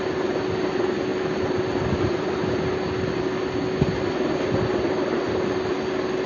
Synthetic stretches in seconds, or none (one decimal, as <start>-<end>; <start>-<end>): none